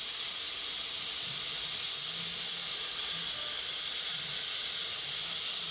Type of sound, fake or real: real